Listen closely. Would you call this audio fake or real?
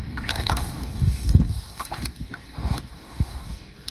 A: fake